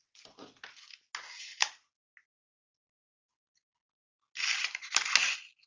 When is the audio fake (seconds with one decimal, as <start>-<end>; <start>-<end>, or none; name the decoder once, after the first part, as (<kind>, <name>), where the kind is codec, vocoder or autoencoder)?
none